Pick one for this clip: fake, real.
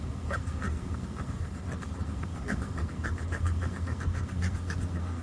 fake